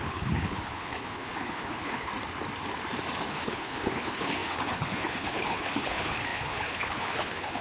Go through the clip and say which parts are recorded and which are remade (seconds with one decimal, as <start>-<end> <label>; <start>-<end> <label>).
0.0-2.1 remade; 2.1-3.3 recorded; 3.3-7.6 remade